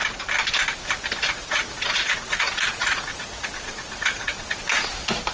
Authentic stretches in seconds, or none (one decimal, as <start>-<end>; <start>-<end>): 0.0-1.4; 4.6-5.3